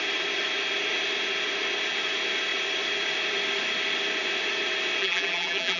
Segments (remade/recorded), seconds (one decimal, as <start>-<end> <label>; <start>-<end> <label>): 0.0-5.0 recorded; 5.0-5.8 remade